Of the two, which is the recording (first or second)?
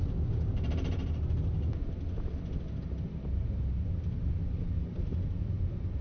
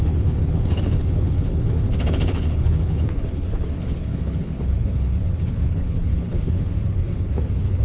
first